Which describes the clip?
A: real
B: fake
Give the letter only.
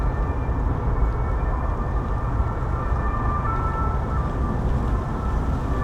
A